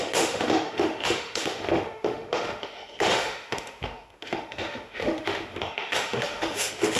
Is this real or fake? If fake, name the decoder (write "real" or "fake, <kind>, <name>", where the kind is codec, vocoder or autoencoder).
fake, autoencoder, DAC-VAE